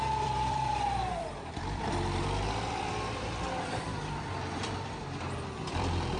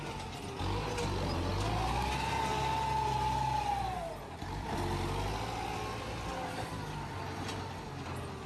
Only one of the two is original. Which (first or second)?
second